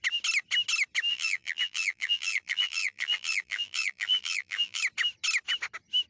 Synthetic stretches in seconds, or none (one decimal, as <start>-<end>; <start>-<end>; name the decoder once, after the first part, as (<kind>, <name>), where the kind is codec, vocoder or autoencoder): 1.1-4.8 (vocoder, BigVGAN v2)